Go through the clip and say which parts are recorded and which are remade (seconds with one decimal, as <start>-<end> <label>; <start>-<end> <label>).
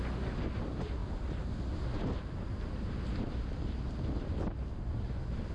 0.0-5.5 recorded